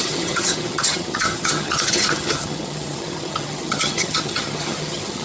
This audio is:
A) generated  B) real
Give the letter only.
A